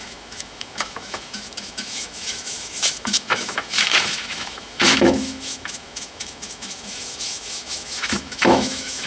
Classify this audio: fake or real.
fake